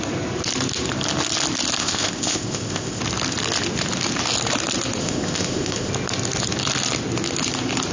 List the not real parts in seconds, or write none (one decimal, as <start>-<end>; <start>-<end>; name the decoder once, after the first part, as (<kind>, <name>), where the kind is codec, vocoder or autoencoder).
1.8-3.0 (codec, ZipCodec); 5.0-5.9